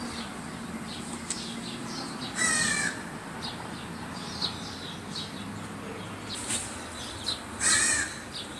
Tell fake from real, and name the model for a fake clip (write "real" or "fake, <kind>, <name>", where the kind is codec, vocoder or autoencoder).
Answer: real